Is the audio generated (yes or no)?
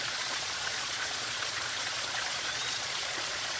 yes